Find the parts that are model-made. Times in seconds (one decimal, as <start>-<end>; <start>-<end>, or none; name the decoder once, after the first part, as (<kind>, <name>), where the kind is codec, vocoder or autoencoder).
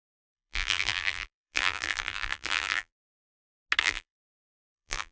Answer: 0.0-3.3 (vocoder, BigVGAN v2); 3.8-5.1